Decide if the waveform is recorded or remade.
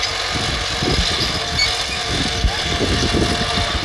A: recorded